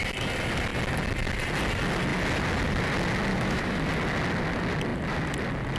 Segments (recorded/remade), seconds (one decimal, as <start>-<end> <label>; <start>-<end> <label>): 0.0-3.3 recorded; 3.3-3.8 remade; 3.8-5.8 recorded